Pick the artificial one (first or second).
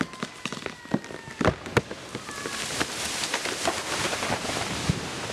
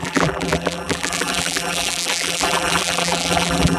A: second